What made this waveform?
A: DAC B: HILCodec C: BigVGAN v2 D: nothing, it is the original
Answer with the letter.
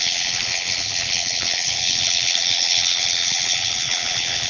B